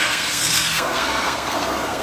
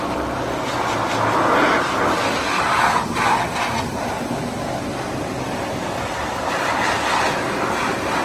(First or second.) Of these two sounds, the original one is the second